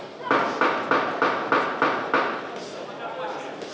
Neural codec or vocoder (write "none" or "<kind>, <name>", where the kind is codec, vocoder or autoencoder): none